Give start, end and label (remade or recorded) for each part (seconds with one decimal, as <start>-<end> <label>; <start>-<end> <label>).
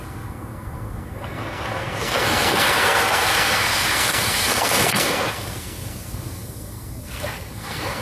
0.0-8.0 remade